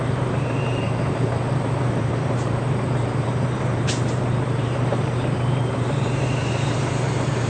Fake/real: fake